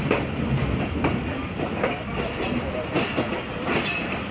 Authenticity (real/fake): real